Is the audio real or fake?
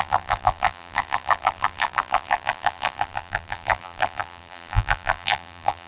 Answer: fake